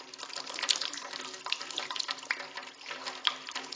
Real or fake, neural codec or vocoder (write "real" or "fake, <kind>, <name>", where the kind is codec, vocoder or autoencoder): real